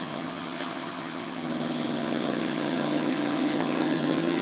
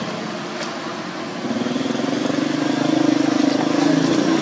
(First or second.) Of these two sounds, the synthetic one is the first